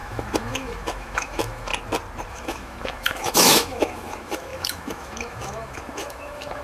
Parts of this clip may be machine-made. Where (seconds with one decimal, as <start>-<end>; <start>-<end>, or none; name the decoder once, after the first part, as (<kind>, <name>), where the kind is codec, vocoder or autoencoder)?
0.0-1.7 (autoencoder, DAC-VAE); 2.3-6.6